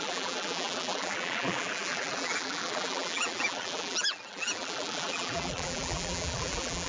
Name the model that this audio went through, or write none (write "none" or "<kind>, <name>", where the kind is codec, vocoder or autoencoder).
vocoder, BigVGAN v2